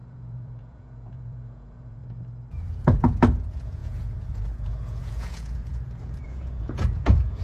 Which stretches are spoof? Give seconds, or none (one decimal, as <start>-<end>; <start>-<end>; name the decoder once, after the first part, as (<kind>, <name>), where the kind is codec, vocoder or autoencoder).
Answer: 0.0-2.0 (vocoder, Vocos); 2.5-7.4